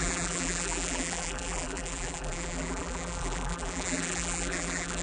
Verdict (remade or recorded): remade